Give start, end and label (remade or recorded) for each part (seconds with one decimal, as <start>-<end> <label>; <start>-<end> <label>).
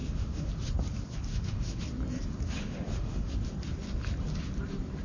0.0-0.5 remade; 0.5-1.3 recorded; 1.3-1.8 remade; 1.8-2.6 recorded; 2.6-3.3 remade; 3.3-5.0 recorded